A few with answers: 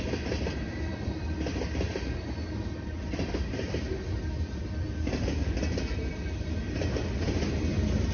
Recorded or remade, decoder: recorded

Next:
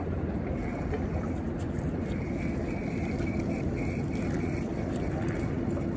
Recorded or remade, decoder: recorded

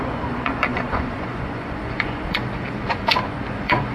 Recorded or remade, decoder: remade, vocoder, Vocos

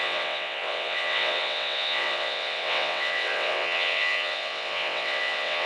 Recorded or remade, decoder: remade, vocoder, WaveNeXt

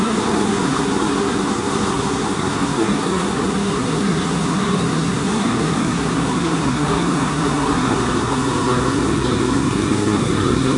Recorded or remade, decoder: remade, codec, SNAC